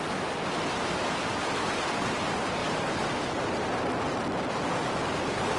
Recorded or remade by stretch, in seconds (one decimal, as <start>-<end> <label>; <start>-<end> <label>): 0.0-5.6 recorded